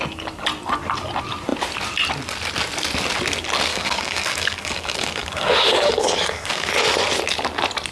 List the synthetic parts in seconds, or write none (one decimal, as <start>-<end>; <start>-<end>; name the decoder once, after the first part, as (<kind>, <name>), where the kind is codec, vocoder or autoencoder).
3.7-6.7 (codec, DAC)